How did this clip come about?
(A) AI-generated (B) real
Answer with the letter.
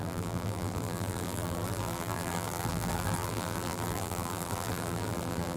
A